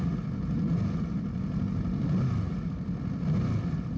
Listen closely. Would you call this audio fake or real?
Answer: real